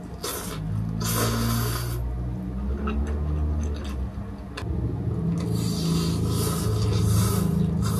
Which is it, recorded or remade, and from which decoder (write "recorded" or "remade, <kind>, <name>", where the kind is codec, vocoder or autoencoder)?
recorded